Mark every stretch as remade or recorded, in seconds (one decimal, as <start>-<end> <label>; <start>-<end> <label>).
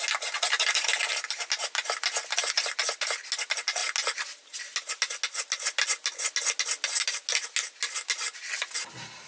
0.0-9.3 recorded